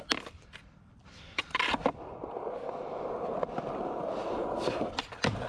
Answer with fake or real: fake